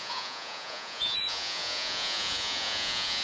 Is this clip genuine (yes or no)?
no